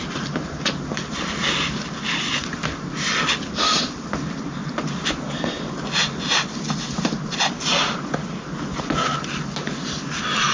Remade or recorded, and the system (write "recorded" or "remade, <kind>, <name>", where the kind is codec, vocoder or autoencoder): recorded